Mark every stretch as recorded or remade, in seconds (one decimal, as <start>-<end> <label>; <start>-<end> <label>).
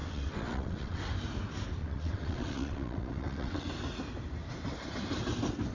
0.0-1.0 remade; 1.0-1.8 recorded; 1.8-3.7 remade; 3.7-5.7 recorded